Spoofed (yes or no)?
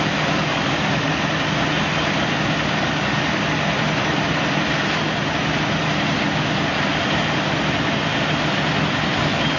no